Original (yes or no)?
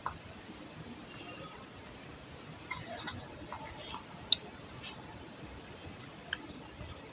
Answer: yes